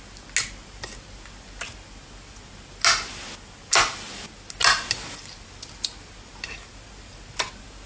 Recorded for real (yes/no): yes